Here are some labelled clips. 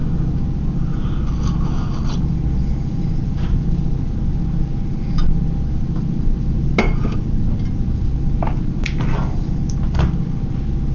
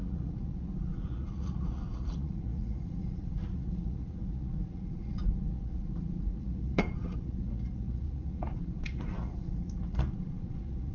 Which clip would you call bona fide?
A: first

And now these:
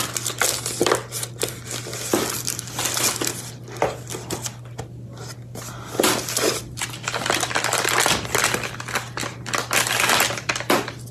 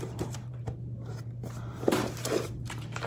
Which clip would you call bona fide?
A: first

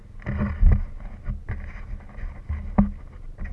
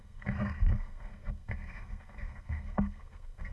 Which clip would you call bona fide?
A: first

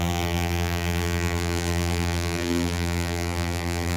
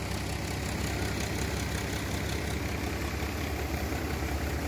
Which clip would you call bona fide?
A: second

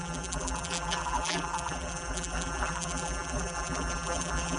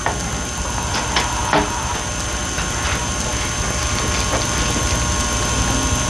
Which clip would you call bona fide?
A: second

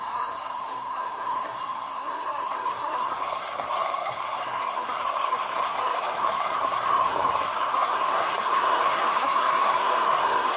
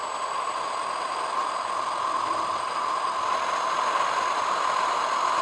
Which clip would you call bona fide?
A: second